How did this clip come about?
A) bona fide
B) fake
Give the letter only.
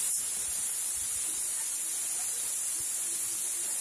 A